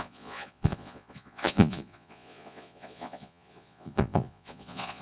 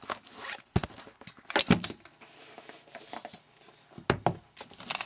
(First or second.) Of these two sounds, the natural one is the second